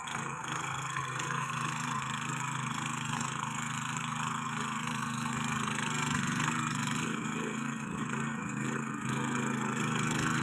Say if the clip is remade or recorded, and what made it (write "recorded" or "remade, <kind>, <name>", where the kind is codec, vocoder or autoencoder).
remade, codec, SNAC